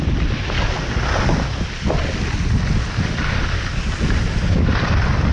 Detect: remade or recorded recorded